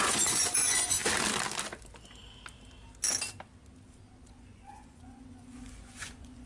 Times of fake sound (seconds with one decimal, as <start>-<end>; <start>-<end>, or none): 0.0-1.0; 4.2-6.5